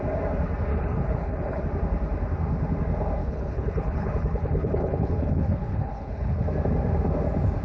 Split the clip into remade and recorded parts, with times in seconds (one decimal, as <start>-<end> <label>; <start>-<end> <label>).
0.0-0.7 recorded; 0.7-1.6 remade; 1.6-3.2 recorded; 3.2-6.4 remade; 6.4-7.6 recorded